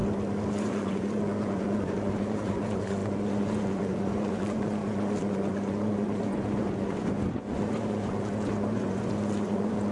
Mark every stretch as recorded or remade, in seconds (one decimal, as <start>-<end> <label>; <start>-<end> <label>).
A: 0.0-0.5 recorded; 0.5-9.9 remade